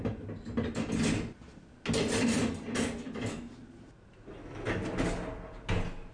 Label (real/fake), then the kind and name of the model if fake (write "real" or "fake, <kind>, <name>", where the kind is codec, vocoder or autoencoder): real